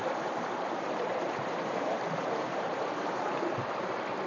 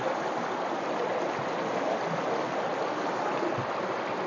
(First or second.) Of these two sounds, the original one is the second